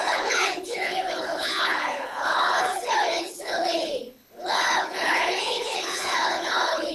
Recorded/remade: remade